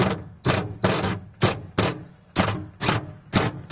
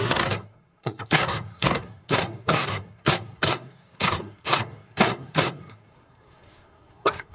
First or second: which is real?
first